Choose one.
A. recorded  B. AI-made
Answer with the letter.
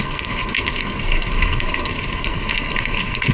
B